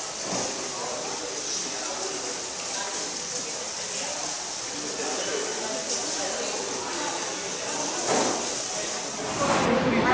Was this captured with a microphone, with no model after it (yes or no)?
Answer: yes